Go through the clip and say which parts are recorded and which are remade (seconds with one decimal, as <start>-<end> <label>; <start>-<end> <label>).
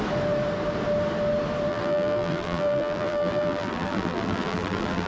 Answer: 0.0-1.7 recorded; 1.7-5.1 remade